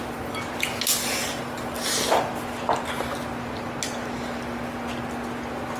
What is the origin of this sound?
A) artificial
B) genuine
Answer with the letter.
B